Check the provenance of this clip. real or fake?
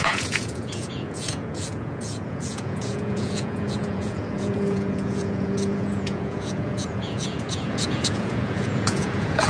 fake